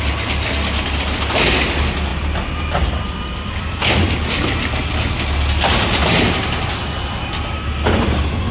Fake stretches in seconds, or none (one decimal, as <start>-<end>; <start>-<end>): none